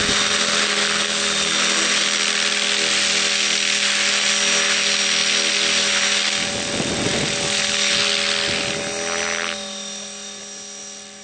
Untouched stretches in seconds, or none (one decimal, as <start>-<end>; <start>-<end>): 0.0-11.2